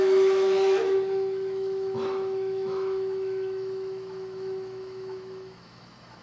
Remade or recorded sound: remade